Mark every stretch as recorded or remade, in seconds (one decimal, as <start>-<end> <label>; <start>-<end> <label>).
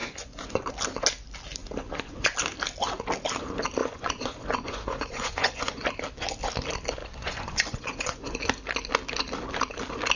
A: 0.0-0.7 remade; 0.7-1.6 recorded; 1.6-2.3 remade; 2.3-3.8 recorded; 3.8-5.9 remade; 5.9-7.0 recorded; 7.0-8.4 remade; 8.4-10.2 recorded